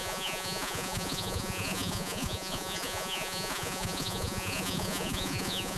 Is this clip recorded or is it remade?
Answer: remade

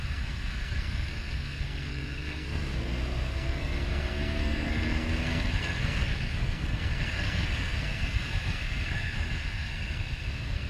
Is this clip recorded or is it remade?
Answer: remade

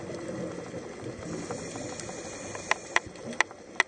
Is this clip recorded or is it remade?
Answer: recorded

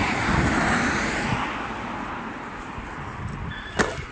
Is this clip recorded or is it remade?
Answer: remade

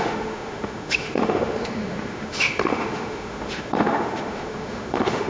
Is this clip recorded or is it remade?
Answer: remade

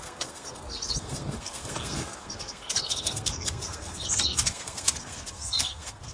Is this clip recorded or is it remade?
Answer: remade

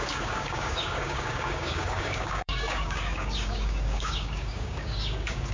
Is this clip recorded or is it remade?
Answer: remade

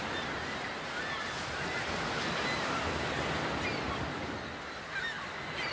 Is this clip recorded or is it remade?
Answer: recorded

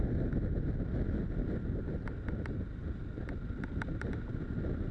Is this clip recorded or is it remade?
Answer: recorded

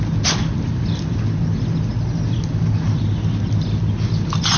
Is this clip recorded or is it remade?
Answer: recorded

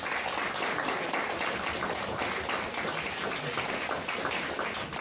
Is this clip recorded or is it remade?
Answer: recorded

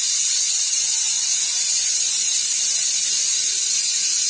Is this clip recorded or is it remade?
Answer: recorded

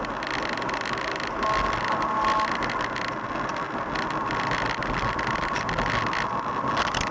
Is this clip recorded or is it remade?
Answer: recorded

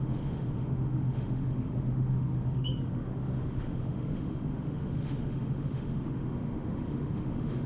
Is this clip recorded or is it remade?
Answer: remade